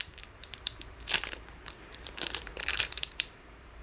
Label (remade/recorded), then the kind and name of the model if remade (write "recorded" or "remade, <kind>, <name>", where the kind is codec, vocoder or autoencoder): remade, vocoder, BigVGAN v2